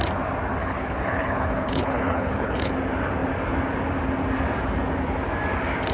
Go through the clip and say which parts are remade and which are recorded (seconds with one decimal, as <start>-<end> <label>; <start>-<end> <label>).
0.0-0.5 recorded; 0.5-2.7 remade; 2.7-5.9 recorded